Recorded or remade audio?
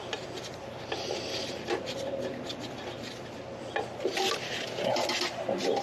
recorded